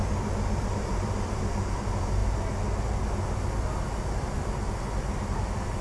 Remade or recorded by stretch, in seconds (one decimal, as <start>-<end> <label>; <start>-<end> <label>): 0.0-0.6 recorded; 0.6-1.8 remade; 1.8-5.8 recorded